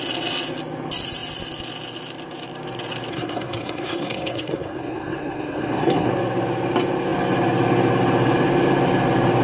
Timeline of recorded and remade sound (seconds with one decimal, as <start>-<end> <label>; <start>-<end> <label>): 0.0-3.1 recorded; 3.1-6.1 remade; 6.1-9.4 recorded